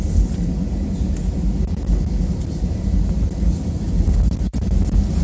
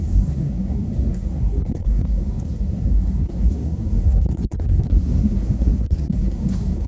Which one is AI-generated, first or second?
second